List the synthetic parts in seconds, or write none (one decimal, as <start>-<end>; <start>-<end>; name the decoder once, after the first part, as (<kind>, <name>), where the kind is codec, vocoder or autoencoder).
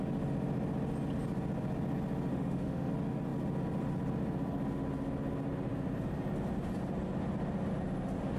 2.3-2.9 (autoencoder, DAC-VAE)